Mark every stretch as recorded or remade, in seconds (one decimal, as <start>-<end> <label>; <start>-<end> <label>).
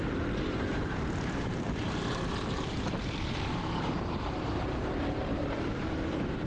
0.0-6.5 remade